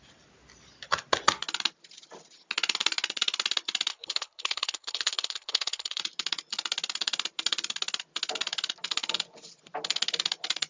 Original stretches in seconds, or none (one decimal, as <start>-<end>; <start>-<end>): 0.0-3.9; 6.0-10.7